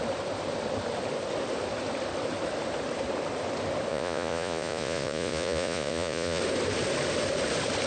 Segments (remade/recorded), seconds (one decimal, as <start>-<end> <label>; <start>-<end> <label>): 0.0-3.9 recorded; 3.9-6.4 remade; 6.4-7.9 recorded